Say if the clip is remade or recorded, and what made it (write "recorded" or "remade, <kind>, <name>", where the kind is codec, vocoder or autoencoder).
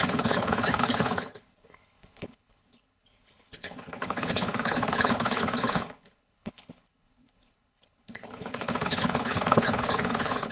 remade, codec, HILCodec